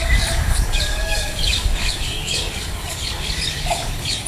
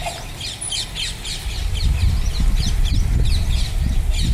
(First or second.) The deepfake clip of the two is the first